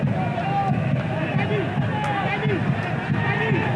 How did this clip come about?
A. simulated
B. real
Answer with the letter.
B